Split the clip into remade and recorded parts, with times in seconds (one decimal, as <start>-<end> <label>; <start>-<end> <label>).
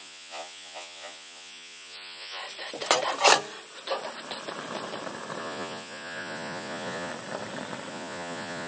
0.0-2.4 remade; 2.4-5.4 recorded; 5.4-7.1 remade; 7.1-7.9 recorded; 7.9-8.7 remade